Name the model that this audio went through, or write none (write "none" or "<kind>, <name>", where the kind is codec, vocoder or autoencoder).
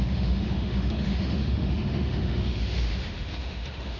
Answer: autoencoder, DAC-VAE